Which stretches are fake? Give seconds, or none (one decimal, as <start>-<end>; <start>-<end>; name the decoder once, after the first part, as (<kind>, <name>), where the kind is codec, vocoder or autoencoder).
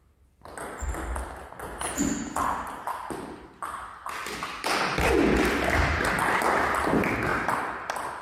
4.2-5.8 (vocoder, BigVGAN v2)